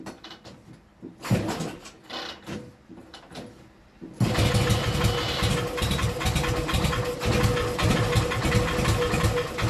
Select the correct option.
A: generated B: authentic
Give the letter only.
B